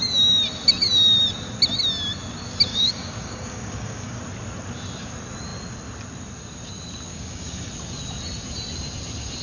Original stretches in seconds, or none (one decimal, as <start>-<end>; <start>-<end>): 0.0-2.7; 4.2-7.1; 7.7-9.4